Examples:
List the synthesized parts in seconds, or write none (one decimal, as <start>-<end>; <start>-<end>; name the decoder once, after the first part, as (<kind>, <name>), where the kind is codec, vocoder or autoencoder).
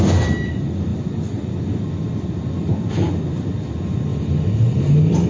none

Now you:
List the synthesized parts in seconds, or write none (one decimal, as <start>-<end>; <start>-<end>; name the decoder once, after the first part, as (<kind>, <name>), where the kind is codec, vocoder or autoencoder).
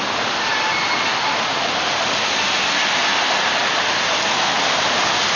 none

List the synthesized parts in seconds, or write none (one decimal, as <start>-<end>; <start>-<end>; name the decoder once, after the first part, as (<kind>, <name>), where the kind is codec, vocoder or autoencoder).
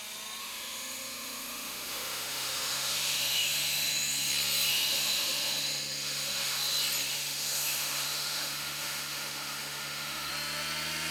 0.4-4.3 (autoencoder, DAC-VAE); 4.7-6.6; 7.1-10.3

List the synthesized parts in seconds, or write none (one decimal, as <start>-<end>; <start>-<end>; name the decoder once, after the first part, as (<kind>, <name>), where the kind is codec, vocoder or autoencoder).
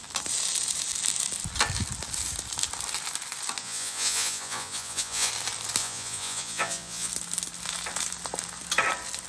3.6-5.3 (vocoder, Vocos); 5.8-7.1